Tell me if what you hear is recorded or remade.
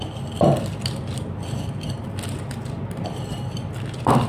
recorded